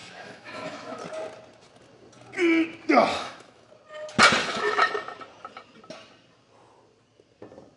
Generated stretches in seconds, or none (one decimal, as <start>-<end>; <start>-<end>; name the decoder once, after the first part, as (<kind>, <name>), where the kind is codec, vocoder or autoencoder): 0.0-1.0 (autoencoder, DAC-VAE); 3.1-3.7; 4.4-4.9